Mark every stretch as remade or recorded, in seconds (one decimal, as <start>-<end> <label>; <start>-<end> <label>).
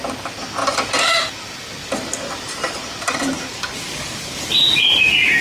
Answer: 0.0-0.6 recorded; 0.6-1.2 remade; 1.2-1.8 recorded; 1.8-5.0 remade; 5.0-5.4 recorded